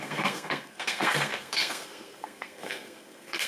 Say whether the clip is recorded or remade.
remade